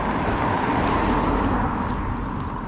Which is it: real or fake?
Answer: real